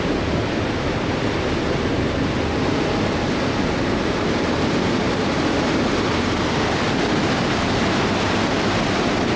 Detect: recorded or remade recorded